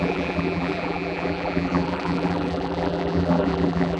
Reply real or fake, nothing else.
fake